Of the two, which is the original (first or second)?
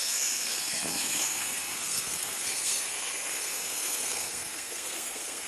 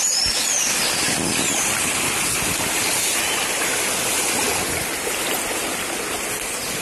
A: second